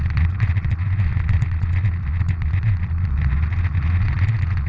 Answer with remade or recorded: remade